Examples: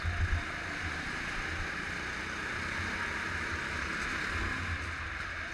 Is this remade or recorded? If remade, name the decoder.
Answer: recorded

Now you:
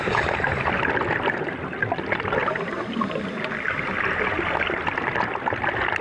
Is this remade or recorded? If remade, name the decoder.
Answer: recorded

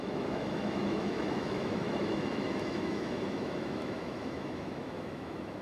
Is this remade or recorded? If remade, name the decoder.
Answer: remade, autoencoder, DAC-VAE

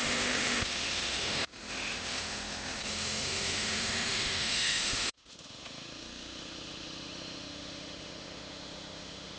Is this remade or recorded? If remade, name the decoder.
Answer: remade, autoencoder, DAC-VAE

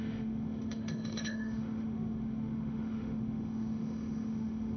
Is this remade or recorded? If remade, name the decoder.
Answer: remade, autoencoder, DAC-VAE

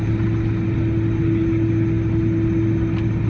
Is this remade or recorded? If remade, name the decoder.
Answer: recorded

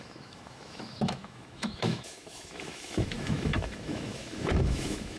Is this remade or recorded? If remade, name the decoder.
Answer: remade, autoencoder, DAC-VAE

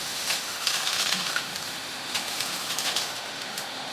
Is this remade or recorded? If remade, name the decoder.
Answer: remade, autoencoder, DAC-VAE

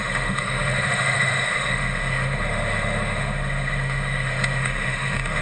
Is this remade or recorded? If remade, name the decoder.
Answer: remade, autoencoder, DAC-VAE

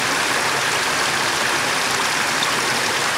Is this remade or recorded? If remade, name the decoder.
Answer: recorded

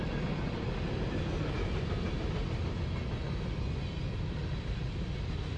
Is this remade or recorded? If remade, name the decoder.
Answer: recorded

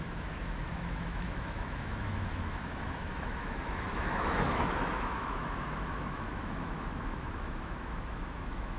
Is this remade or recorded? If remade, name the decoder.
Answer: remade, autoencoder, DAC-VAE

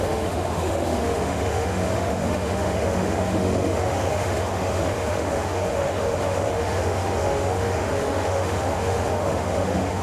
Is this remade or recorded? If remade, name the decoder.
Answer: remade, autoencoder, DAC-VAE